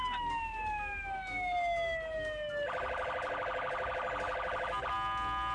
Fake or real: real